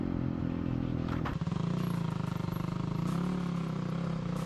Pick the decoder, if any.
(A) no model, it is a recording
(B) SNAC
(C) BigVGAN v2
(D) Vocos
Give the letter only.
A